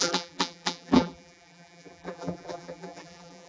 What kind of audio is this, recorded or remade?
remade